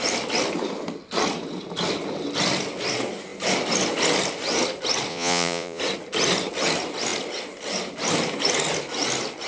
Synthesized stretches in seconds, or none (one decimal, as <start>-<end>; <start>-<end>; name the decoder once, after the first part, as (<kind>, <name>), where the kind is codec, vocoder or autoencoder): 5.1-5.8 (vocoder, Vocos)